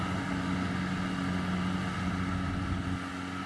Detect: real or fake real